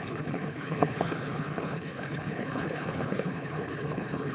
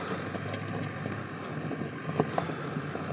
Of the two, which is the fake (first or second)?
first